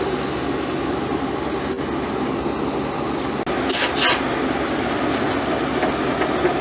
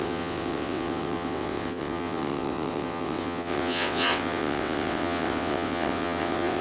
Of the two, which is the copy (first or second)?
second